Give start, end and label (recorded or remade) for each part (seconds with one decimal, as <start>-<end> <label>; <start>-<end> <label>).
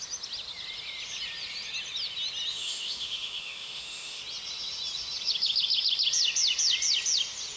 0.0-2.5 recorded; 2.5-4.2 remade; 4.2-7.6 recorded